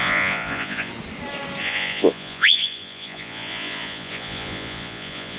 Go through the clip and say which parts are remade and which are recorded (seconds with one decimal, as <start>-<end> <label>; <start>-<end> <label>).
0.0-0.9 remade; 0.9-1.6 recorded; 1.6-5.4 remade